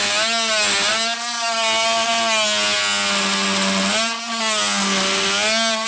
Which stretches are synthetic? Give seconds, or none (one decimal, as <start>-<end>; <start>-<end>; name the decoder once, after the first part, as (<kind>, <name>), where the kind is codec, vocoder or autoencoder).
none